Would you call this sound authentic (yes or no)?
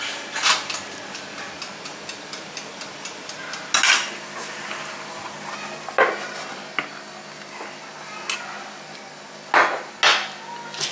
yes